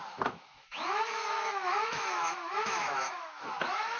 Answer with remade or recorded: remade